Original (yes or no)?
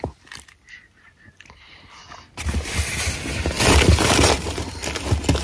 yes